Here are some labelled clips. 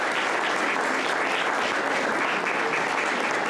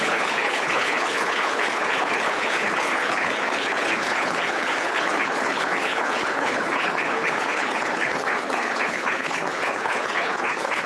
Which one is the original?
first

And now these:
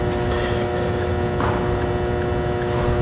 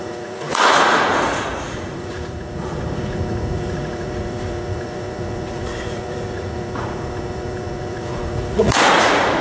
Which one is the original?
first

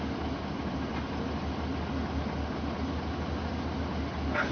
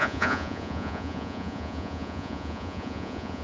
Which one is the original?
first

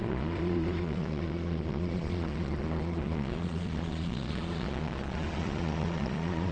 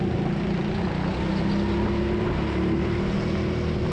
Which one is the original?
second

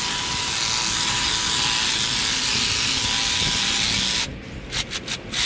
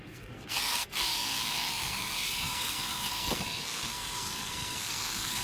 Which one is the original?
first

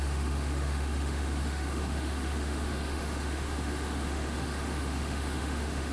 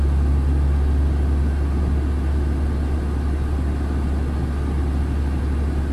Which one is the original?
second